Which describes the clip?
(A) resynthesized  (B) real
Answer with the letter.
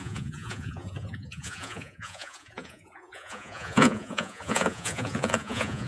A